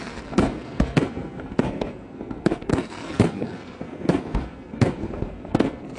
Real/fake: fake